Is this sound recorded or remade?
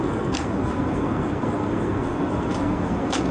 remade